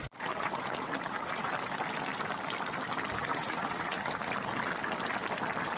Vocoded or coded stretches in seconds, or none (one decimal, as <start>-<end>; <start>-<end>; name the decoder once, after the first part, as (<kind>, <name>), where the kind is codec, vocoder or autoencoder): 0.0-1.5 (vocoder, Vocos); 3.2-4.3